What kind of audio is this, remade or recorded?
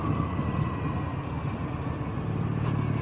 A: recorded